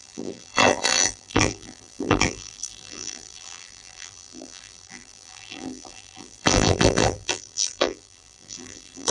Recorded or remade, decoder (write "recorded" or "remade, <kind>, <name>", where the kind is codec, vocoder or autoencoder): remade, vocoder, BigVGAN v2